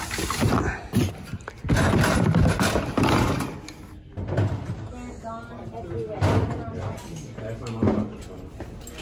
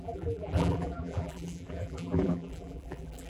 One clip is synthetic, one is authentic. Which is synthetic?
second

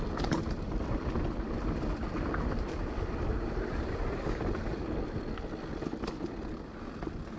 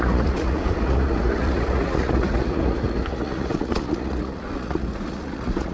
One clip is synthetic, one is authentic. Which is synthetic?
second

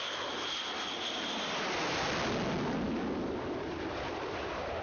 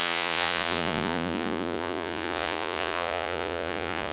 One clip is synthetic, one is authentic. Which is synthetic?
second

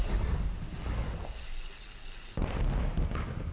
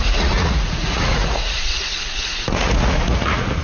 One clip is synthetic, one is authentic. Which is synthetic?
second